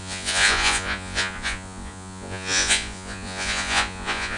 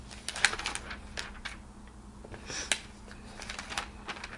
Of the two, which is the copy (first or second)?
first